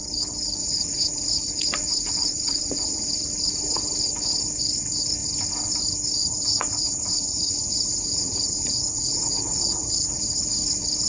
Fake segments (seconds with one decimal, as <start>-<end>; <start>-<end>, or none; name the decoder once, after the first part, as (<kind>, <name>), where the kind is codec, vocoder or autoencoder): 0.6-3.1 (vocoder, Vocos); 6.2-10.2